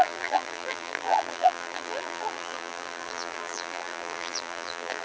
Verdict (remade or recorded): remade